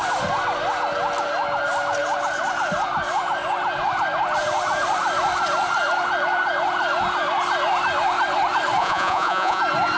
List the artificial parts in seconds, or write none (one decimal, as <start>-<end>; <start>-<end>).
8.8-9.6